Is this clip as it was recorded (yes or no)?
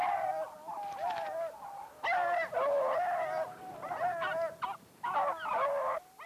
yes